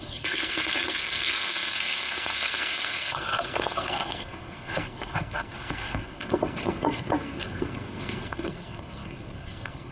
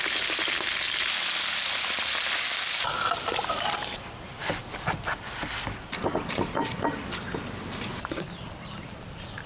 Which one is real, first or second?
second